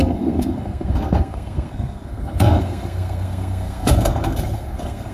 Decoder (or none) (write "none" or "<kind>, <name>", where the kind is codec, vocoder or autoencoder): codec, SNAC